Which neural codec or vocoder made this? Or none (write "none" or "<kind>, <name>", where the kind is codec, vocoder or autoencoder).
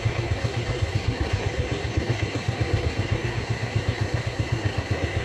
codec, SNAC